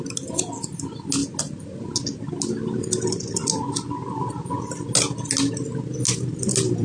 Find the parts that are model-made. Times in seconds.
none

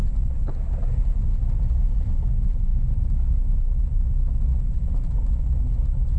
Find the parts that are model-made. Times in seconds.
none

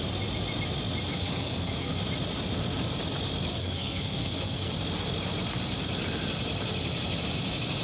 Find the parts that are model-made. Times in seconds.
1.1-2.0 (codec, SNAC); 3.5-4.7

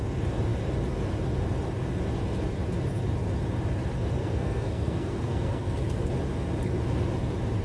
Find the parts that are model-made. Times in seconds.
4.2-6.1 (codec, SNAC)